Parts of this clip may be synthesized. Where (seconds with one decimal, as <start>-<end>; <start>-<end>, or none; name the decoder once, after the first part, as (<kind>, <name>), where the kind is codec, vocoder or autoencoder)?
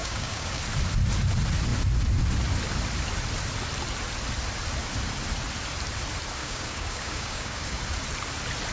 0.0-0.6 (codec, DAC); 6.4-7.8